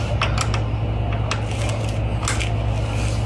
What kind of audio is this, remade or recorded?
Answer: recorded